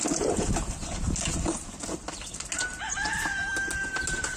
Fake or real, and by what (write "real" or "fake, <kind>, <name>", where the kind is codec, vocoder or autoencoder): real